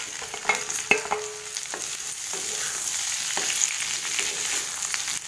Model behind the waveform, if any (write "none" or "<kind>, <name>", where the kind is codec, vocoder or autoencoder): none